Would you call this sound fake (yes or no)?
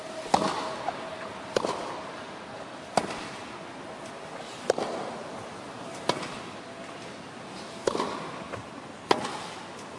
no